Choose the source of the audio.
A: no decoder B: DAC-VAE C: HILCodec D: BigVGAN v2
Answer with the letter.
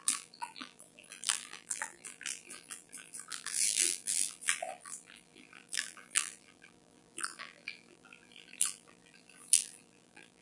D